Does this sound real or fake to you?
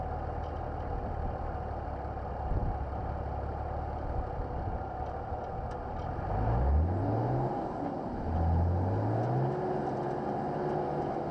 real